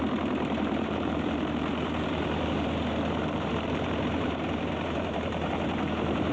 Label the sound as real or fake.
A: fake